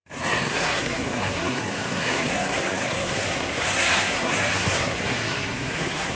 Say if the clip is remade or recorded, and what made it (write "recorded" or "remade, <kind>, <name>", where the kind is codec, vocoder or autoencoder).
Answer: remade, codec, SNAC